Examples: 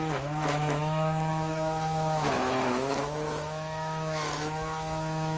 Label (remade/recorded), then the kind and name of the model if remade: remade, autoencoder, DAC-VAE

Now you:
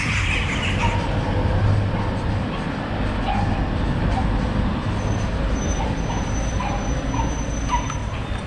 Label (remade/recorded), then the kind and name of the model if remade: recorded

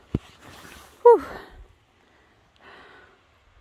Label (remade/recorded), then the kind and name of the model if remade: recorded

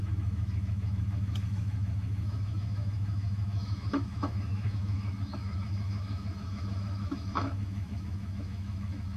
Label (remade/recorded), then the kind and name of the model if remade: remade, autoencoder, DAC-VAE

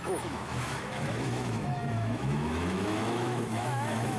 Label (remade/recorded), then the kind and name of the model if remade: remade, autoencoder, DAC-VAE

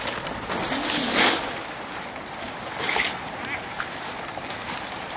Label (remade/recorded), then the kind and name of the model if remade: recorded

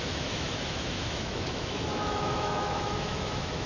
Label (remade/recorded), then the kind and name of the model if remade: remade, autoencoder, DAC-VAE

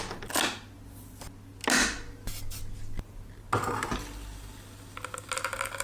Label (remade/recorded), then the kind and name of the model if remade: recorded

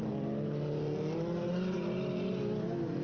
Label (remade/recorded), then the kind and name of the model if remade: recorded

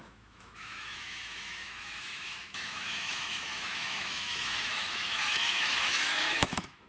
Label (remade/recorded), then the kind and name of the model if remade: remade, autoencoder, DAC-VAE